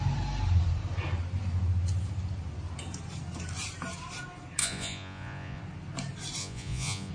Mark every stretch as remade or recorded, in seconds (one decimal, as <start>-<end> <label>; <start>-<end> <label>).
0.0-4.6 recorded; 4.6-5.6 remade; 5.6-6.4 recorded; 6.4-7.1 remade